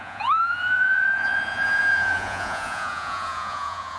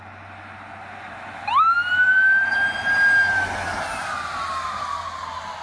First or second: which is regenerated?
first